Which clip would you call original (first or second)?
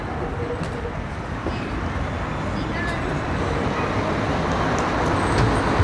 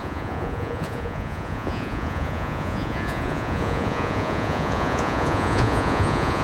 first